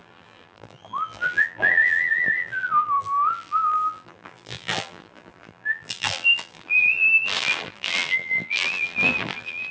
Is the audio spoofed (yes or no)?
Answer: yes